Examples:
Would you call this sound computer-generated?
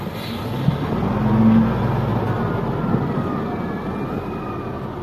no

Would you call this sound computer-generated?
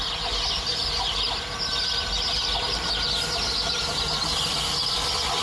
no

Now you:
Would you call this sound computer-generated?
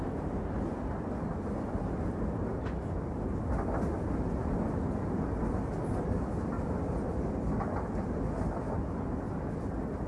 no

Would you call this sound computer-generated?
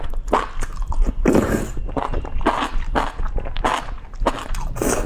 no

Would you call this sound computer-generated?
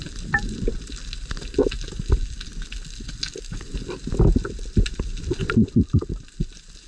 no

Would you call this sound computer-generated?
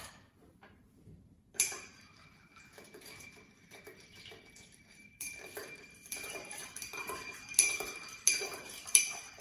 yes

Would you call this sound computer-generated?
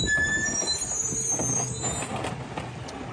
no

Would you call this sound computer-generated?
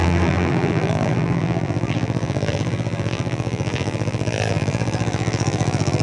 yes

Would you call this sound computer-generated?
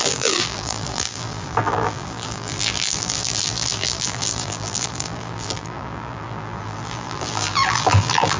yes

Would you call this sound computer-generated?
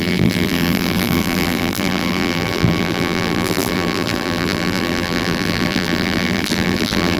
yes